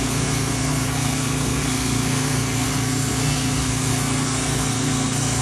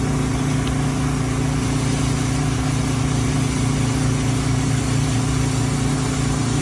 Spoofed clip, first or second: first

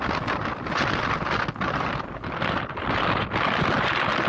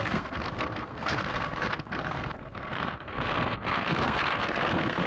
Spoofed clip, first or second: second